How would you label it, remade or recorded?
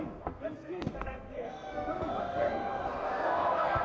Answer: remade